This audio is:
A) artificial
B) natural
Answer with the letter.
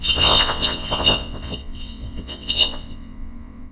A